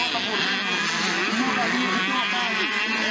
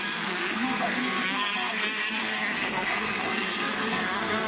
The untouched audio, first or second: first